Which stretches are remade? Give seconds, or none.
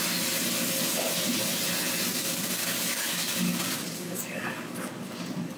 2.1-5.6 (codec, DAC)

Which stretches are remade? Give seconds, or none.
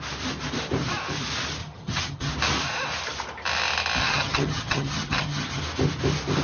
1.6-2.3 (vocoder, HiFi-GAN); 4.0-5.6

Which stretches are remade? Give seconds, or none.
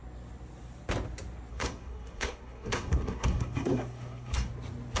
1.5-4.5 (codec, SNAC)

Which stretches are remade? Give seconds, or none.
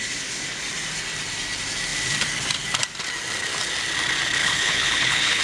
4.4-5.4 (codec, HILCodec)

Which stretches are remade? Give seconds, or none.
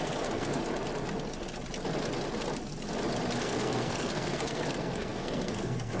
0.0-0.6 (codec, SNAC); 3.4-6.0